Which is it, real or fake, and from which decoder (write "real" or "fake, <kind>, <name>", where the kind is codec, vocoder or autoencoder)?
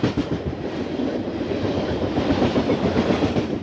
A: real